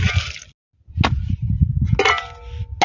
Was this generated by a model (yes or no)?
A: no